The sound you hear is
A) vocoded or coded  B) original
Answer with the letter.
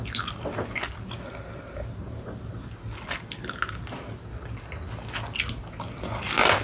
B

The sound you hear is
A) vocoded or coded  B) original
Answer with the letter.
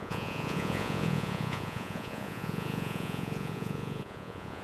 A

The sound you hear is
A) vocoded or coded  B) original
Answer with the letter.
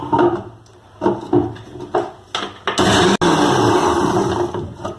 B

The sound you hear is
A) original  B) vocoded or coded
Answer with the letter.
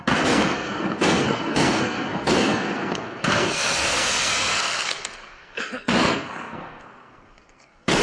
B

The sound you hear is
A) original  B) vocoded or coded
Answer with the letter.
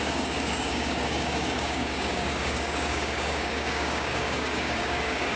B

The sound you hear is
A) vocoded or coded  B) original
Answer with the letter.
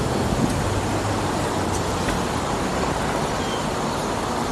B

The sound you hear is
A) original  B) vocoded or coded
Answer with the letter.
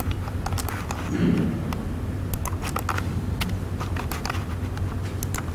A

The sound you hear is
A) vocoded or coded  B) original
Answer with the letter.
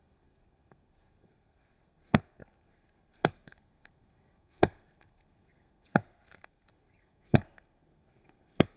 A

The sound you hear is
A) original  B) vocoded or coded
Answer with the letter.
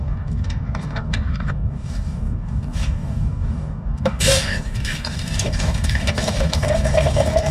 B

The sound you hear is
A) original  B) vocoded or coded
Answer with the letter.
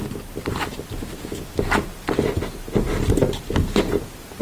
A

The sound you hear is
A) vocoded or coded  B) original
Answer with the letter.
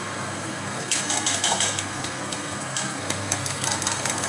A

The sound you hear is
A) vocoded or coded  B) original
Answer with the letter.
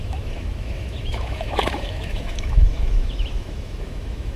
A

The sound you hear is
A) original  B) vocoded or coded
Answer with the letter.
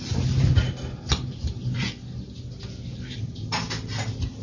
A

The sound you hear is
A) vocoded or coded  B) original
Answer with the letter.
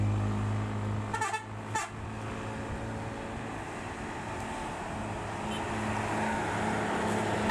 B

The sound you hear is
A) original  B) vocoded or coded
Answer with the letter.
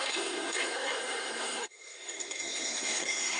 B